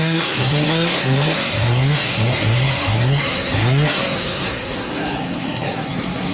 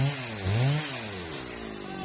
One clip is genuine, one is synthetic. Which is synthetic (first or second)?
first